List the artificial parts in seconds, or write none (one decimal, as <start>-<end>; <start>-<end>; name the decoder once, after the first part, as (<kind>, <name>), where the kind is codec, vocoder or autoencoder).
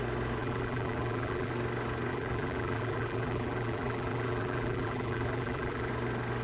0.4-1.5 (vocoder, BigVGAN v2); 2.1-5.9